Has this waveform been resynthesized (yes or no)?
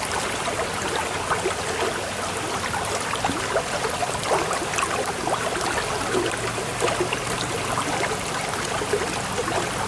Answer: no